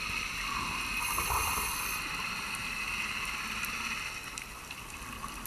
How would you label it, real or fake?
real